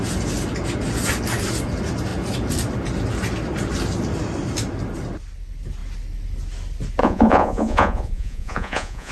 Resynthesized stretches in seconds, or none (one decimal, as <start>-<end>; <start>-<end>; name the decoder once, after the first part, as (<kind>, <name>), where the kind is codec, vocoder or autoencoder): 7.0-9.1 (vocoder, Vocos)